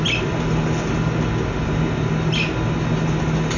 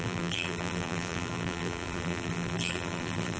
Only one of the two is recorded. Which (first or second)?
first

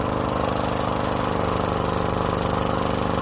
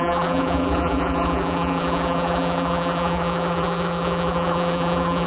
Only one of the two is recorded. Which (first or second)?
first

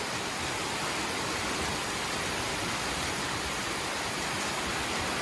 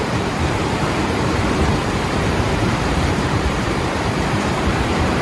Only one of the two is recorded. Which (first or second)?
first